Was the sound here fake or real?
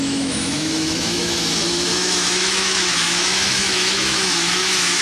fake